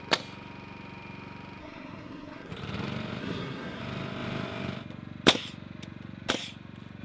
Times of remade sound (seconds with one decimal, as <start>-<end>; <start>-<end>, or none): 1.6-2.5; 3.2-3.8